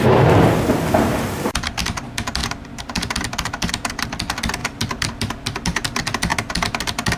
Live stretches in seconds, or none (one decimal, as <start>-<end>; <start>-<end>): 0.0-1.1; 1.8-2.4; 3.7-4.6; 5.1-7.2